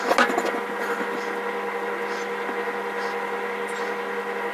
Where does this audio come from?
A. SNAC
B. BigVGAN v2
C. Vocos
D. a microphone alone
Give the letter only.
D